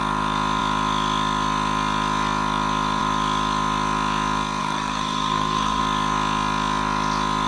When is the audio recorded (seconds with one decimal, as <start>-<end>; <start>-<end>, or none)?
0.0-4.6; 5.8-7.5

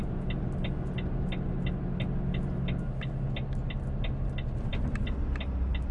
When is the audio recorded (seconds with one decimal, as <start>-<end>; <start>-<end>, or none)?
0.0-5.9

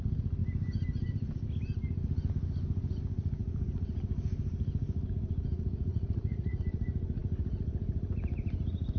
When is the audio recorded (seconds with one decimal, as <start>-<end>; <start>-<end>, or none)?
0.0-5.9; 6.6-9.0